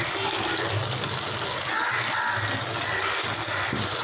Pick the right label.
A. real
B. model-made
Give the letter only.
A